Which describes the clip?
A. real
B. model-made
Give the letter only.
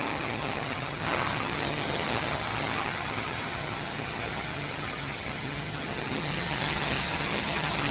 B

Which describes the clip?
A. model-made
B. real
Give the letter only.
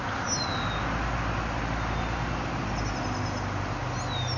B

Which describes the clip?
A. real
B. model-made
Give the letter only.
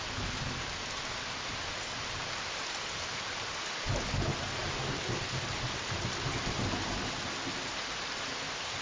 A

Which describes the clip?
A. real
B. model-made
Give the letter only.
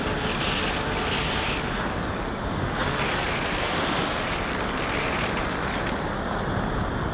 A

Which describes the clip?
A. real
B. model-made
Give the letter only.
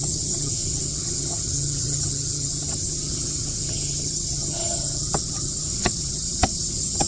B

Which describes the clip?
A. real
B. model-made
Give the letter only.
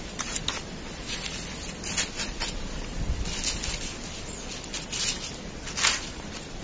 A